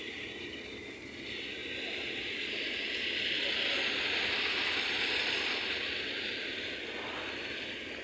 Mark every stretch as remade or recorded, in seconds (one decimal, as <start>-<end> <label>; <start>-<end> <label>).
0.0-8.0 recorded